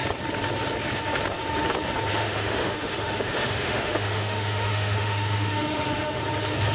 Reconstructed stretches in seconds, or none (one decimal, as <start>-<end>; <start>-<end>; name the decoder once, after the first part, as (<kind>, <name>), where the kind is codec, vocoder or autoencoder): 2.2-6.2 (autoencoder, DAC-VAE)

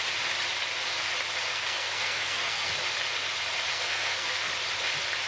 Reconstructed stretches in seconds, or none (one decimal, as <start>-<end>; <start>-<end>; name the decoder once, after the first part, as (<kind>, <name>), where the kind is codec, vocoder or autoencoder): 1.5-2.7 (codec, SNAC); 3.7-4.5

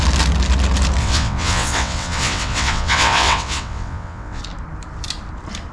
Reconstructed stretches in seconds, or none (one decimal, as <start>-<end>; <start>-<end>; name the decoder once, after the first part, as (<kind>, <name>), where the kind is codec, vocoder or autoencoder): 1.0-4.4 (vocoder, WaveNeXt)

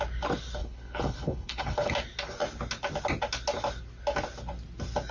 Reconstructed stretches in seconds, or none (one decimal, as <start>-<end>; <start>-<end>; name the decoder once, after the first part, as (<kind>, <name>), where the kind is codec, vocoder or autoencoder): 0.6-1.9 (codec, HILCodec)

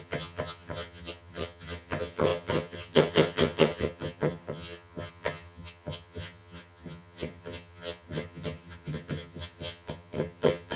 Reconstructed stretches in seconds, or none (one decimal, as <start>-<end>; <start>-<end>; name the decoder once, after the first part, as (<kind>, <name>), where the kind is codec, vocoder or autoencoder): 0.0-10.8 (vocoder, HiFi-GAN)

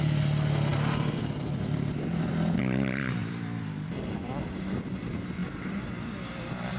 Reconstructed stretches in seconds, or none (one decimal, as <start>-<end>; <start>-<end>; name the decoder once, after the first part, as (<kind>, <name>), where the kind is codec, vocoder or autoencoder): 0.7-2.6 (vocoder, BigVGAN v2); 3.2-4.1

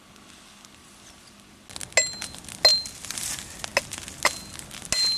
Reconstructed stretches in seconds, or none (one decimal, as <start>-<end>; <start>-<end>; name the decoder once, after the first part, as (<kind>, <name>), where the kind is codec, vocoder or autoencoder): none